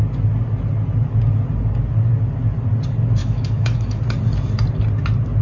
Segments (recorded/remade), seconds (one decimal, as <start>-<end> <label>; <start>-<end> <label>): 0.0-3.2 recorded; 3.2-4.0 remade; 4.0-5.4 recorded